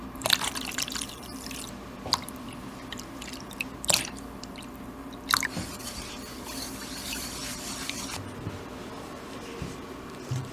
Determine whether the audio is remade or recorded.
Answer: remade